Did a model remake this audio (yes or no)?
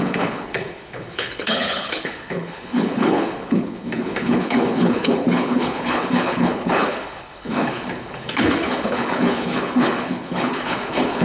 yes